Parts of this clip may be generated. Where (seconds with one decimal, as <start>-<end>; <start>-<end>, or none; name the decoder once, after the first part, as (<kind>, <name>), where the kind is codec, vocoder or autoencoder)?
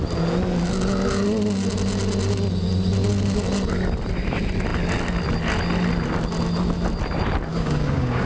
7.5-8.3 (codec, DAC)